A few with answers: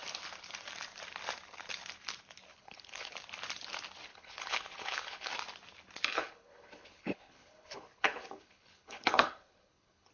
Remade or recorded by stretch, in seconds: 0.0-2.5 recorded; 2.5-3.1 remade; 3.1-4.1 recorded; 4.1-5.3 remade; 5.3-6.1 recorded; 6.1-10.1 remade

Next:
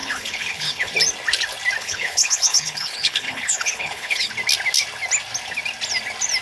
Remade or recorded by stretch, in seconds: 0.0-0.9 remade; 0.9-1.8 recorded; 1.8-4.3 remade; 4.3-6.4 recorded

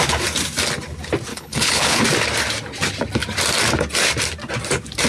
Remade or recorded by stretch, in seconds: 0.0-1.3 recorded; 1.3-2.0 remade; 2.0-5.1 recorded

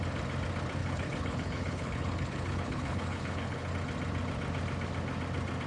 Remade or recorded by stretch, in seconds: 0.0-0.8 recorded; 0.8-3.7 remade; 3.7-5.7 recorded

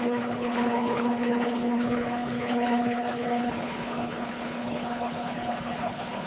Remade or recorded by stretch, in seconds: 0.0-6.3 remade